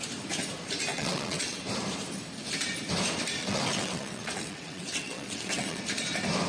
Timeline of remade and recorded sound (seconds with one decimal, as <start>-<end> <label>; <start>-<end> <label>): 0.0-0.9 recorded; 0.9-1.6 remade; 1.6-3.4 recorded; 3.4-5.8 remade; 5.8-6.5 recorded